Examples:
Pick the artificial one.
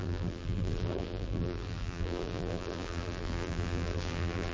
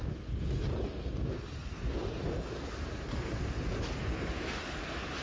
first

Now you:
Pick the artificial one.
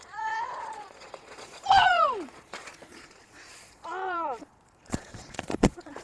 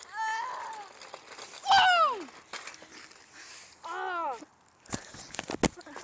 first